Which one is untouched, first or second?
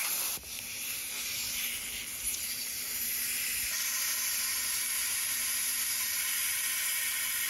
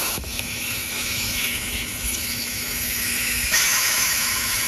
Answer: first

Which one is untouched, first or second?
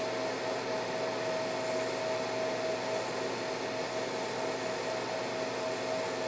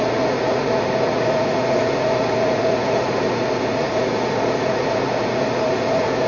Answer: first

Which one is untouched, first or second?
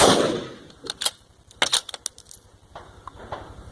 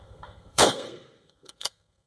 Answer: first